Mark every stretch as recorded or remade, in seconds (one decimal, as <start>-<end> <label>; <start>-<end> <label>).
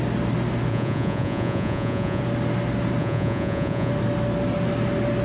0.0-0.7 recorded; 0.7-2.2 remade; 2.2-3.0 recorded; 3.0-3.9 remade; 3.9-5.2 recorded